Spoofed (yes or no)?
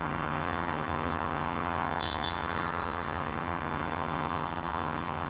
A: yes